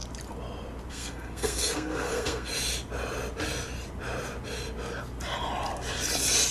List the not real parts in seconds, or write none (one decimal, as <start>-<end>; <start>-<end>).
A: 0.9-2.5